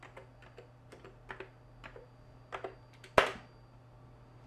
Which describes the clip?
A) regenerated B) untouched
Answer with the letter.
B